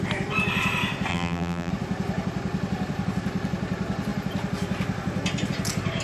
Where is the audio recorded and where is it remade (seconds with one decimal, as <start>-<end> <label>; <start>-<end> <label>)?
0.0-1.1 recorded; 1.1-1.7 remade; 1.7-6.0 recorded